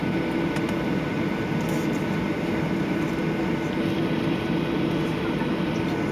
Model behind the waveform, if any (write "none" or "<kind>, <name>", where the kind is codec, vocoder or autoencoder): none